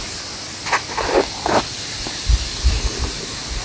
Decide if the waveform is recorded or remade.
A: recorded